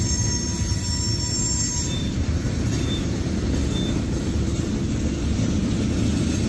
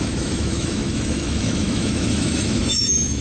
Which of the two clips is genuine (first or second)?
first